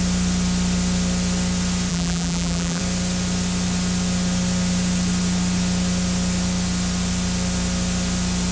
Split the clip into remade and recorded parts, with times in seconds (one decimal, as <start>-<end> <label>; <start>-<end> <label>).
0.0-1.9 recorded; 1.9-2.8 remade; 2.8-8.5 recorded